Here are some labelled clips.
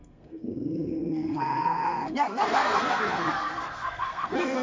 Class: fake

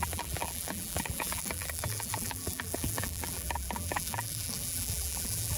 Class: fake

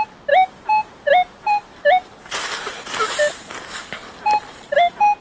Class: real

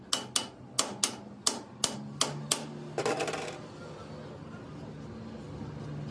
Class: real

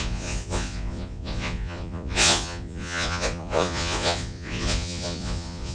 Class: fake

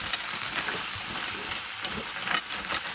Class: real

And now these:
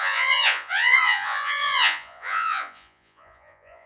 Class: fake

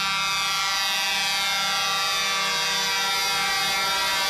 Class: real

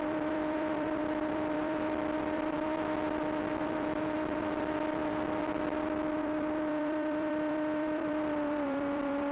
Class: fake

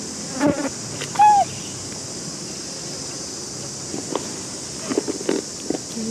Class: real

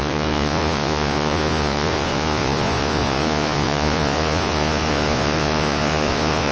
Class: fake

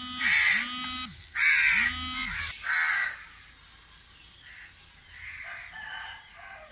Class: real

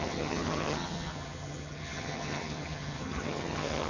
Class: fake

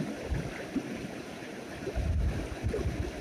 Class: fake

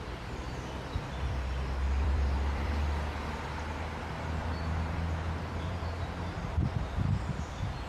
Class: fake